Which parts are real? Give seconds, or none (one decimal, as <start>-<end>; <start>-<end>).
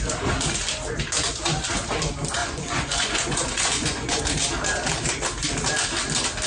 0.0-2.4; 4.2-6.5